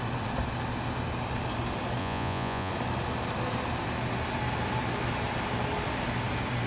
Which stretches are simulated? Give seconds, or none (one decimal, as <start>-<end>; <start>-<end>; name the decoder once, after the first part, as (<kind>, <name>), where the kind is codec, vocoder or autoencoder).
2.0-2.7 (vocoder, Vocos)